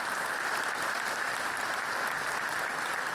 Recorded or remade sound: recorded